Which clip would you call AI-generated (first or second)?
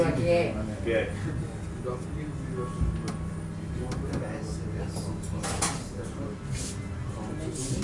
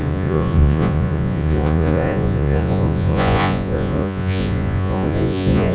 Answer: second